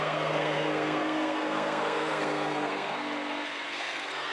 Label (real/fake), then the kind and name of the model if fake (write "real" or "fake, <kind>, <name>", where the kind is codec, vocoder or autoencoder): fake, codec, SNAC